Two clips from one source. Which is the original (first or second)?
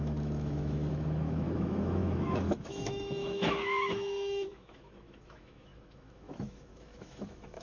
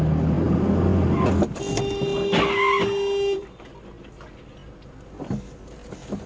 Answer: second